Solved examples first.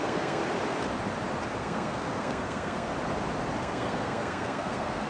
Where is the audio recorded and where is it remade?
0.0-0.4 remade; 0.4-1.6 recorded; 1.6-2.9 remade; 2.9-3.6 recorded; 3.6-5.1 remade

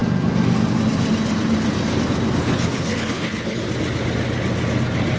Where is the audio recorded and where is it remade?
0.0-2.4 recorded; 2.4-3.6 remade; 3.6-5.2 recorded

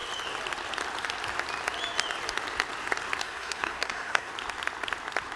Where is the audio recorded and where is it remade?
0.0-3.2 recorded; 3.2-4.3 remade; 4.3-5.4 recorded